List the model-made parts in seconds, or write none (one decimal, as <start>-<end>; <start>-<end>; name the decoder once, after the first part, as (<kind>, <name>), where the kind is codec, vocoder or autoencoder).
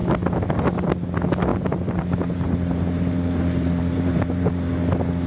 1.5-4.7 (vocoder, BigVGAN v2)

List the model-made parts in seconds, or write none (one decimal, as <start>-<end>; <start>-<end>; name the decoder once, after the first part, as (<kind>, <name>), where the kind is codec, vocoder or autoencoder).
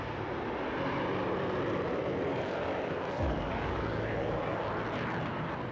2.3-4.6 (codec, DAC)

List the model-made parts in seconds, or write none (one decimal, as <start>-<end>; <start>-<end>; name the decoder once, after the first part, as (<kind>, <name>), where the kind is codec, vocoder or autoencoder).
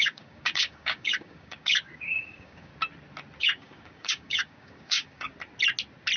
0.0-2.7 (codec, DAC); 3.4-5.3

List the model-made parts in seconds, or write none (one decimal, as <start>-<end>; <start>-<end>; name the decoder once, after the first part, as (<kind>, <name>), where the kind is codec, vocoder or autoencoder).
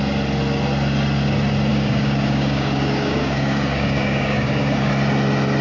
1.7-4.9 (codec, DAC)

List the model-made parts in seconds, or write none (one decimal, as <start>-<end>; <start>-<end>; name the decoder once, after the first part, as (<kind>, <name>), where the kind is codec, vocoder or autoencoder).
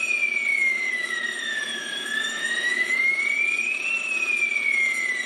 0.5-3.2 (autoencoder, DAC-VAE)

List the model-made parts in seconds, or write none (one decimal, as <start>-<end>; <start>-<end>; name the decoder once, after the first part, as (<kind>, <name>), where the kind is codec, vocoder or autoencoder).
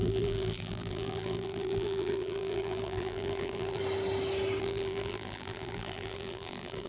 0.0-3.8 (vocoder, BigVGAN v2); 4.6-6.9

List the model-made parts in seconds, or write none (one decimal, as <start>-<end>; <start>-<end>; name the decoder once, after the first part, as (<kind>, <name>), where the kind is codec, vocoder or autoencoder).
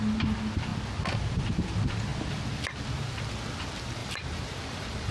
4.0-5.1 (vocoder, BigVGAN v2)